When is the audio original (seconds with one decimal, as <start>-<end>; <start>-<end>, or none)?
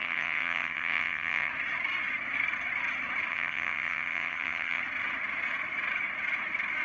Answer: 1.5-3.3; 4.8-6.8